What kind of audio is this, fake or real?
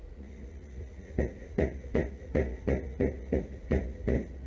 fake